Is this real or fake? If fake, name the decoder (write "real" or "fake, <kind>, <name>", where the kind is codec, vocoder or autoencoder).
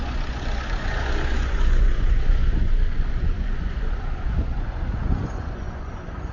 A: fake, vocoder, Vocos